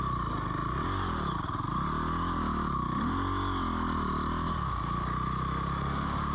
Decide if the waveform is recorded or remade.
recorded